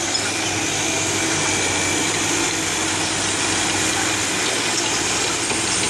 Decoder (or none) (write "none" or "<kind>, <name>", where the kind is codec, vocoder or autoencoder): none